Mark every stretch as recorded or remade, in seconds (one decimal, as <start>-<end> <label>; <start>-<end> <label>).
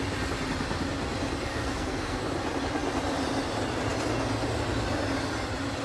0.0-1.5 recorded; 1.5-2.2 remade; 2.2-5.8 recorded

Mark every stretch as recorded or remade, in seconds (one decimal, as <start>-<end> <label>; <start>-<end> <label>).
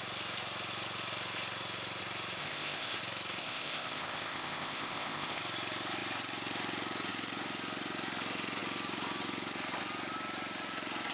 0.0-2.4 recorded; 2.4-3.0 remade; 3.0-3.4 recorded; 3.4-5.4 remade; 5.4-11.1 recorded